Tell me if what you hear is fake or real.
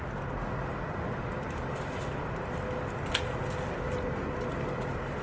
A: real